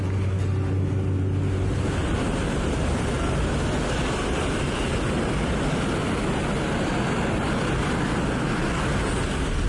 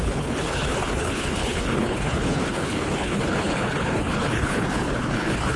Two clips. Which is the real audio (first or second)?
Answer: first